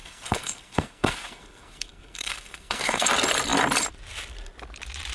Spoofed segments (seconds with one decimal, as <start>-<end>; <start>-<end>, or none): 0.0-3.1